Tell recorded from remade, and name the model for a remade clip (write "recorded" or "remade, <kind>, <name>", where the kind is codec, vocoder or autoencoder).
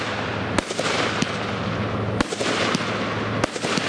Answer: recorded